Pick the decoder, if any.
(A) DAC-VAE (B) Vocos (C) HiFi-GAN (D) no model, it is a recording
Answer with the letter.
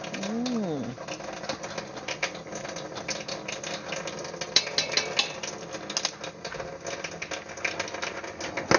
D